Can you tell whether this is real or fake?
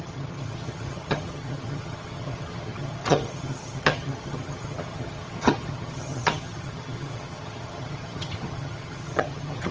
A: fake